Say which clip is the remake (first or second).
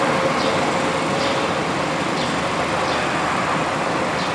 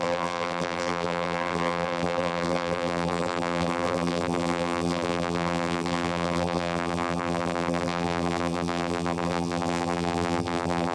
second